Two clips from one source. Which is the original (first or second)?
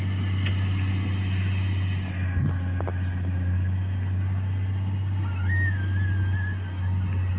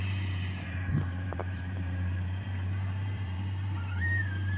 first